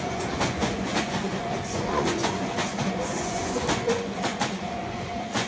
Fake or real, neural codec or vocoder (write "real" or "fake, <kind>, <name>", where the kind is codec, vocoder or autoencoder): fake, vocoder, Vocos